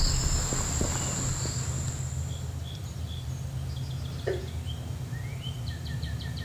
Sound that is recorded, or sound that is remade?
recorded